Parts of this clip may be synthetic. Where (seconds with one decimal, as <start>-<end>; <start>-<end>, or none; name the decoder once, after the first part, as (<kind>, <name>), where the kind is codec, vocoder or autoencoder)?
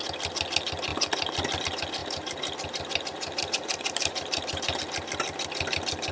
2.0-4.8 (vocoder, BigVGAN v2)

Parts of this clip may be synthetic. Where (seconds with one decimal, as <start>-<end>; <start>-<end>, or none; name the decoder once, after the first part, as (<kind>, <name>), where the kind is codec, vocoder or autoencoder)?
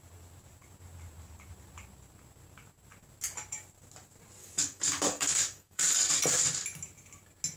4.4-6.1 (codec, DAC)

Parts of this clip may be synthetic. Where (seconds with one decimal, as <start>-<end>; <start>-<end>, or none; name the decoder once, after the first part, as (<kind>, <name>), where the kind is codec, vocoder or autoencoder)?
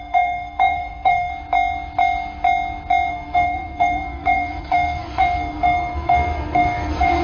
0.0-1.3 (codec, SNAC); 3.1-7.2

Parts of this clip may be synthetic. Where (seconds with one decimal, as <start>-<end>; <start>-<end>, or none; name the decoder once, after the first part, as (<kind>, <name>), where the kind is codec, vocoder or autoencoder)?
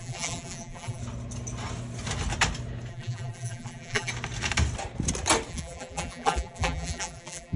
0.0-1.0 (vocoder, BigVGAN v2); 2.9-4.1; 5.5-7.6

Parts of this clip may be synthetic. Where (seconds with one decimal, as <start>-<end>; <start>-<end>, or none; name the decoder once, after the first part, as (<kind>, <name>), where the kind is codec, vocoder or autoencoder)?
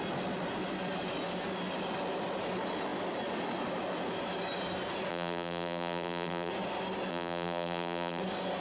5.1-6.5 (vocoder, BigVGAN v2); 7.1-8.2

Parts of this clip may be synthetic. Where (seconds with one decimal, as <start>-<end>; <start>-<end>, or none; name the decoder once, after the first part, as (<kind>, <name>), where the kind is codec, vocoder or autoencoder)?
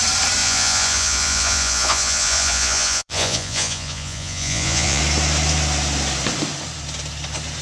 0.4-5.0 (vocoder, Vocos)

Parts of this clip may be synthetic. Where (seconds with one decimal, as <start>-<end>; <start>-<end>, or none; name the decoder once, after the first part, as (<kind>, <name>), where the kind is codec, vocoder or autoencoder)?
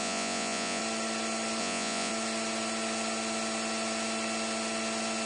0.0-0.8 (vocoder, Vocos); 1.6-2.1